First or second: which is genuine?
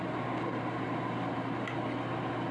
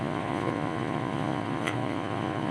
first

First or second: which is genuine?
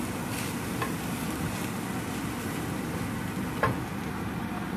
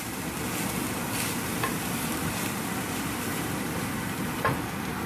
first